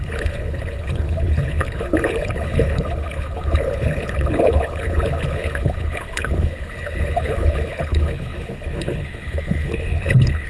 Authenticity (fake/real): fake